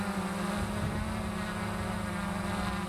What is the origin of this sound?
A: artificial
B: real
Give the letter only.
B